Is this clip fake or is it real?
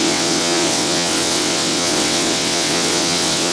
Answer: fake